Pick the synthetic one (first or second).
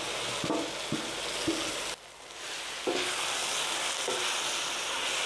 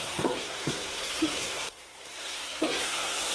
second